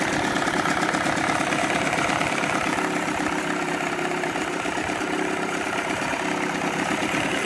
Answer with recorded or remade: recorded